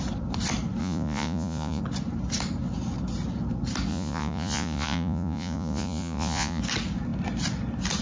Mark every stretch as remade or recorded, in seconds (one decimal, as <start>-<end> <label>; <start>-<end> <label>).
0.0-0.8 recorded; 0.8-1.8 remade; 1.8-3.9 recorded; 3.9-6.6 remade; 6.6-8.0 recorded